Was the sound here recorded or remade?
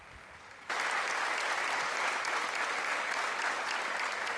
recorded